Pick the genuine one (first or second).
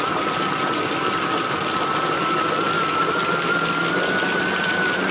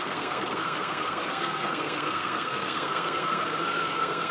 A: first